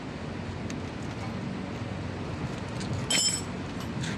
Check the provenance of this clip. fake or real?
real